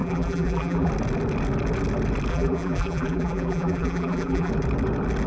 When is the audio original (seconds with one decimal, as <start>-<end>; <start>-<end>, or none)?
0.9-2.3; 4.5-5.3